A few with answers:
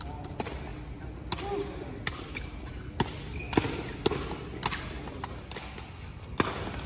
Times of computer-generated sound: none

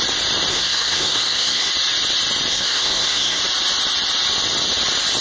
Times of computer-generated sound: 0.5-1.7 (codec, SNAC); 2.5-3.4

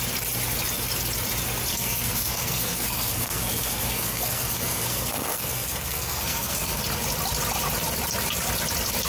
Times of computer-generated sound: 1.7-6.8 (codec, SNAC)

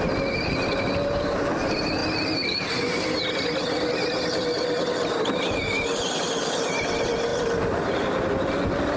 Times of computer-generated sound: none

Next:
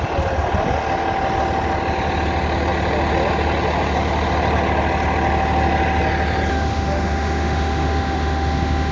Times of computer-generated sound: 6.5-8.9 (autoencoder, DAC-VAE)

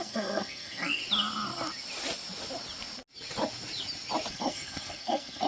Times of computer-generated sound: 0.0-1.0 (codec, SNAC); 4.3-5.5